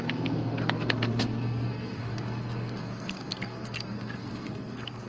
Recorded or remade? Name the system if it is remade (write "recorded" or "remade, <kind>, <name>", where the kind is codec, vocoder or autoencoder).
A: remade, codec, SNAC